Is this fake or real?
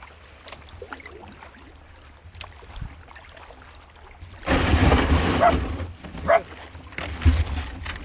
real